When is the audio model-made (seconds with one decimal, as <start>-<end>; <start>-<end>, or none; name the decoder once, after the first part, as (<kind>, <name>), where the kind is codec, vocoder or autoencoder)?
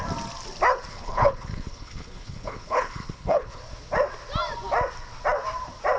0.9-3.6 (codec, HILCodec)